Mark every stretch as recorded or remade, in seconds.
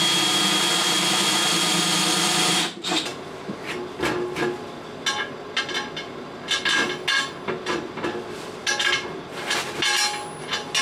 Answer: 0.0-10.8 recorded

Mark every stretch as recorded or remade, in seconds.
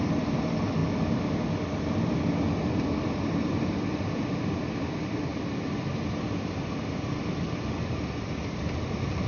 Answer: 0.0-0.8 remade; 0.8-1.7 recorded; 1.7-5.3 remade; 5.3-7.2 recorded; 7.2-9.3 remade